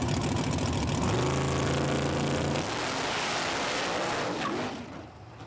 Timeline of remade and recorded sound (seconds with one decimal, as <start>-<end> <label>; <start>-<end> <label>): 0.0-5.5 recorded